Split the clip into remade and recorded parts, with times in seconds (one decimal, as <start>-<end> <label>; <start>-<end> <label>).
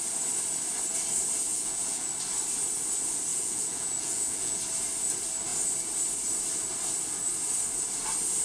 0.0-1.5 recorded; 1.5-2.1 remade; 2.1-3.3 recorded; 3.3-4.6 remade; 4.6-8.4 recorded